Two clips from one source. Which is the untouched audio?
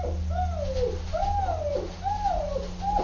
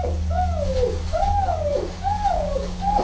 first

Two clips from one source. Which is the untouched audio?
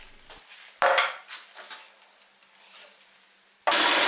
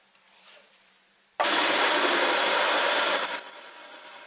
first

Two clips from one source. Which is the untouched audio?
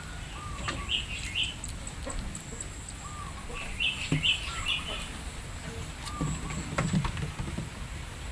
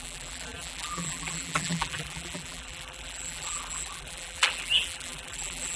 first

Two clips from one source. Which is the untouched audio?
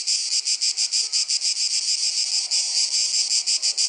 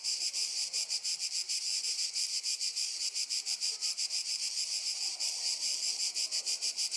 first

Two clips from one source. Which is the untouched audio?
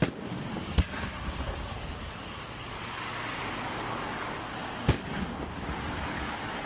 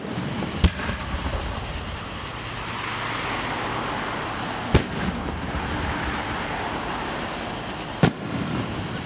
second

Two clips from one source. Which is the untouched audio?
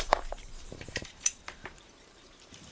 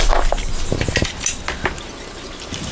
second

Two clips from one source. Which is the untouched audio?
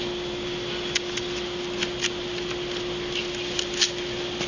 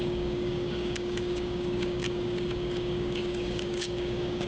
first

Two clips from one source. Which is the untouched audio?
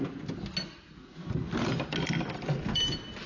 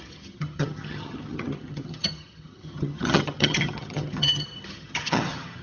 first